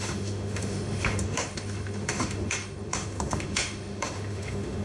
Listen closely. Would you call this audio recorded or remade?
remade